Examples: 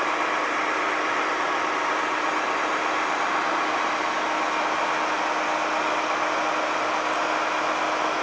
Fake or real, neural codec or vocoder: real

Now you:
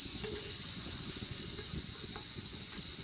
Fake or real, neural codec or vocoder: fake, vocoder, Vocos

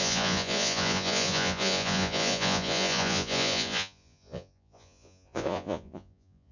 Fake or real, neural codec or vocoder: fake, vocoder, Vocos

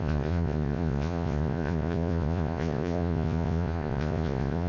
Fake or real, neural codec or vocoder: fake, vocoder, Vocos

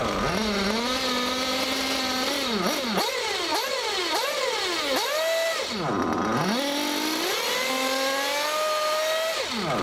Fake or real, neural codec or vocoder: real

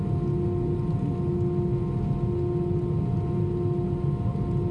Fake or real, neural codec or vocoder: real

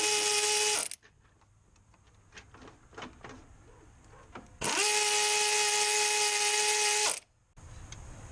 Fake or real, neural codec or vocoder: real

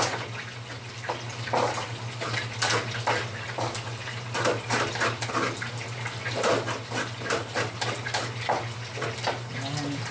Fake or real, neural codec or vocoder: real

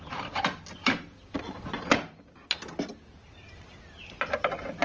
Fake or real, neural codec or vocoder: real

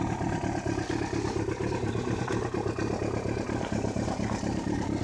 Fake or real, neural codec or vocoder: real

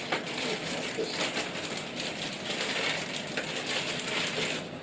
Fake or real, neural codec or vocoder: real